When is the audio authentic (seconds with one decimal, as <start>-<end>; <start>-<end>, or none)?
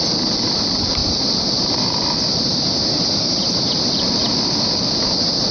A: 0.0-1.0; 4.3-5.5